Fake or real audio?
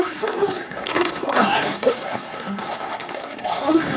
fake